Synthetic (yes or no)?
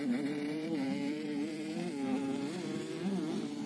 yes